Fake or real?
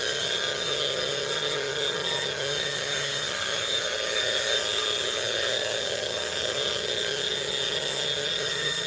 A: fake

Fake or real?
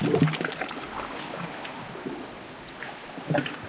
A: real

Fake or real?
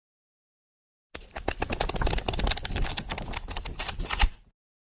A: real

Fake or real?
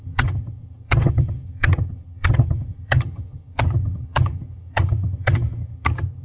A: fake